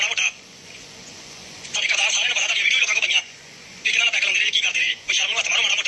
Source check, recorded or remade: remade